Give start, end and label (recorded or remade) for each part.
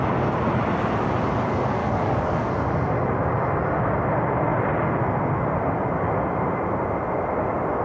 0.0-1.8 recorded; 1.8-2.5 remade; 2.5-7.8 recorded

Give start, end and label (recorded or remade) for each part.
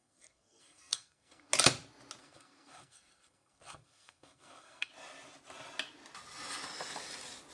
0.0-1.5 remade; 1.5-2.2 recorded; 2.2-4.9 remade; 4.9-7.5 recorded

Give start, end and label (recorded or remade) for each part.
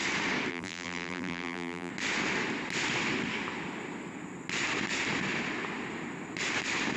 0.0-0.5 recorded; 0.5-1.9 remade; 1.9-7.0 recorded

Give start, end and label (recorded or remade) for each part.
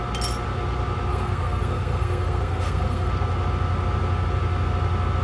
0.0-1.1 recorded; 1.1-3.1 remade; 3.1-5.2 recorded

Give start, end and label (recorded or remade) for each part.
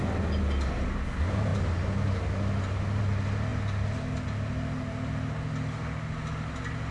0.0-6.9 recorded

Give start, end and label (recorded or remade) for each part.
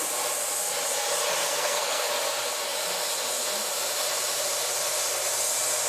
0.0-1.4 recorded; 1.4-2.1 remade; 2.1-5.9 recorded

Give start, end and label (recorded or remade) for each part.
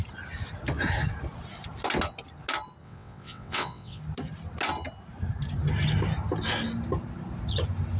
0.0-2.8 recorded; 2.8-4.0 remade; 4.0-8.0 recorded